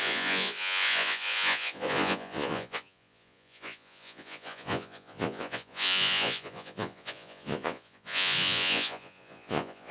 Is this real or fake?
fake